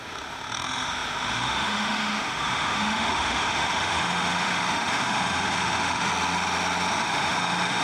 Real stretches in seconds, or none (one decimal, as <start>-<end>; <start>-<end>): 6.1-6.9